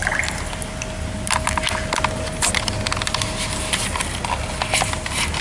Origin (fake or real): real